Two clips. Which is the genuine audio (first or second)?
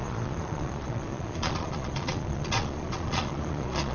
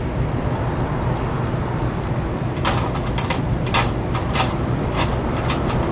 second